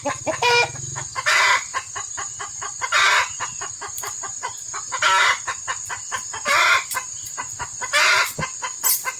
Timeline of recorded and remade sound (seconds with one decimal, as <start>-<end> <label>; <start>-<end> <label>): 0.0-9.2 recorded